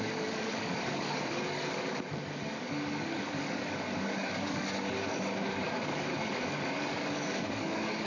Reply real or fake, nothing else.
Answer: fake